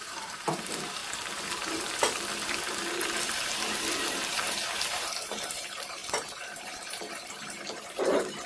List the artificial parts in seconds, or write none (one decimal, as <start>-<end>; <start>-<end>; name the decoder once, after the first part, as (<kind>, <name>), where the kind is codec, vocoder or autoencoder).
0.0-1.0 (vocoder, BigVGAN v2); 2.9-8.5